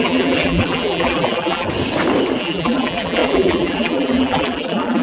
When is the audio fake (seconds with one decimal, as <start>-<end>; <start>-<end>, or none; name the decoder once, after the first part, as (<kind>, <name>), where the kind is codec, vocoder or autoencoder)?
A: 0.0-1.7 (vocoder, BigVGAN v2); 2.4-5.0